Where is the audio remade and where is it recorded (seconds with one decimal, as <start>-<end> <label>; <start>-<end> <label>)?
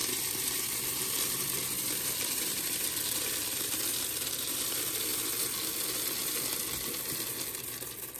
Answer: 0.0-5.1 remade; 5.1-7.6 recorded; 7.6-8.2 remade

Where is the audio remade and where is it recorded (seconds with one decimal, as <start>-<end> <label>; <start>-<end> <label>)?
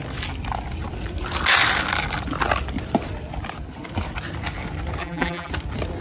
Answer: 0.0-5.0 recorded; 5.0-5.5 remade; 5.5-6.0 recorded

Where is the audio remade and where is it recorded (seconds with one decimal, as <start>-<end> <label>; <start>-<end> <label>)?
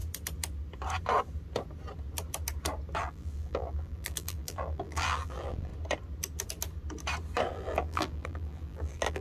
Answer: 0.0-3.0 recorded; 3.0-5.7 remade; 5.7-7.5 recorded; 7.5-9.2 remade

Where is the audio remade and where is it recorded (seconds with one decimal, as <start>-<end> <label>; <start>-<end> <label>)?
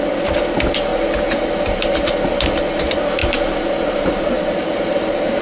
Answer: 0.0-0.9 remade; 0.9-2.6 recorded; 2.6-5.4 remade